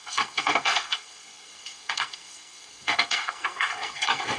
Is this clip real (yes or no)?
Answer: no